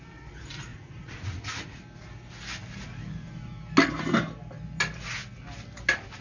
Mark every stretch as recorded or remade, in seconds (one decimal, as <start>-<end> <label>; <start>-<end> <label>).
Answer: 0.0-0.7 recorded; 0.7-1.8 remade; 1.8-6.2 recorded